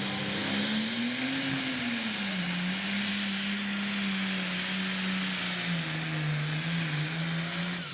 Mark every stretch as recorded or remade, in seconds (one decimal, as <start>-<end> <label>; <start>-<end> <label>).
0.0-7.9 recorded